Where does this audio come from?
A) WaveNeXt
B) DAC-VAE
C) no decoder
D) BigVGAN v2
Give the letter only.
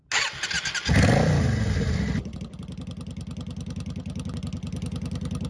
C